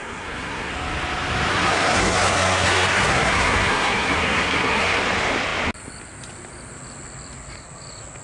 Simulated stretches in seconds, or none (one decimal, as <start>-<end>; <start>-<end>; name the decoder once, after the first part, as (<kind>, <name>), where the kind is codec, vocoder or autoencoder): 0.0-0.7 (codec, SNAC); 1.5-5.0